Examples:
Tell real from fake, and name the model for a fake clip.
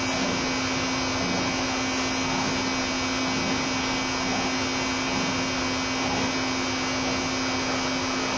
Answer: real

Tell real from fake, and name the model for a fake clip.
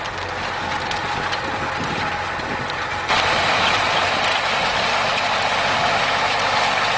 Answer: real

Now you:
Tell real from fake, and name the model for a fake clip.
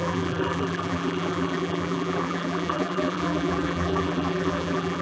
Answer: fake, vocoder, BigVGAN v2